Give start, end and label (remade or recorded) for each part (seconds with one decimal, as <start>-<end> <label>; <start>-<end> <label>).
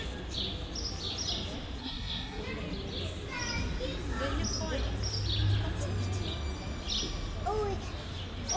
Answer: 0.0-1.8 recorded; 1.8-2.4 remade; 2.4-8.6 recorded